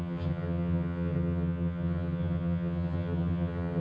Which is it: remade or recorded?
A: remade